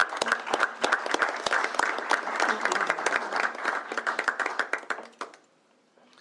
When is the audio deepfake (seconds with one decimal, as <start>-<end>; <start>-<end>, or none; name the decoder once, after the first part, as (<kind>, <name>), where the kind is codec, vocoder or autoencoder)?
none